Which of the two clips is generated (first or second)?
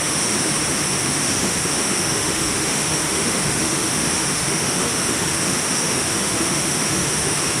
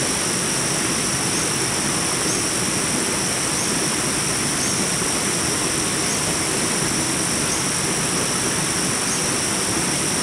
first